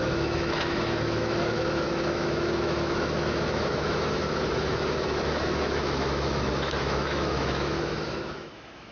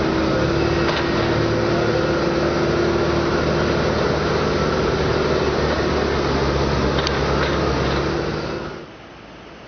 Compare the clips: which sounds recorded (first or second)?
second